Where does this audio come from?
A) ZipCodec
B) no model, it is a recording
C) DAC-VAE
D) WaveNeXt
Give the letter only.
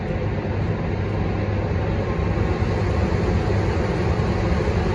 B